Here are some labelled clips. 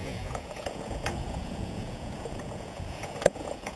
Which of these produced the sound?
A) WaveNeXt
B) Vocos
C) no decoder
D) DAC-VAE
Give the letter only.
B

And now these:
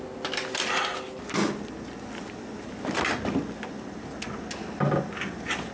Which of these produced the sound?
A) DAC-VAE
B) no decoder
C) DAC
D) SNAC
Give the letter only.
B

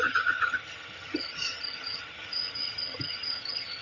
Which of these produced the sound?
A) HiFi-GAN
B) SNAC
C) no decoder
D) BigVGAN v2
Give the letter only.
A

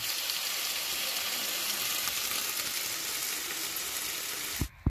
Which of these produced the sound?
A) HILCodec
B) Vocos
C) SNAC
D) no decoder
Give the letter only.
D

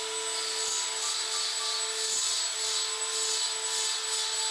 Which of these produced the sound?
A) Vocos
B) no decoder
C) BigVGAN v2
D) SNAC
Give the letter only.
B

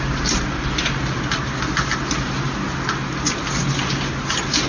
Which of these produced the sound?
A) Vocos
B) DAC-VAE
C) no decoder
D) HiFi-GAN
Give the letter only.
C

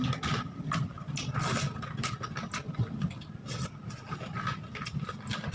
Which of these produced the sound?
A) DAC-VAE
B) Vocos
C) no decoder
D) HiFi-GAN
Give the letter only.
C